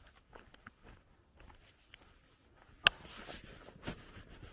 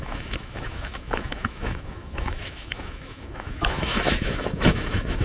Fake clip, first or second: second